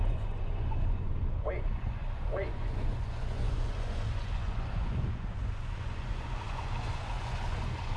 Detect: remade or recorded remade